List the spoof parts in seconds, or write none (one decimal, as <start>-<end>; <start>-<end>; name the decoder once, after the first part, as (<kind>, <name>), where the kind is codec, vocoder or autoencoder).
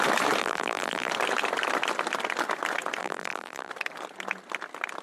0.4-1.1 (vocoder, BigVGAN v2); 3.0-3.7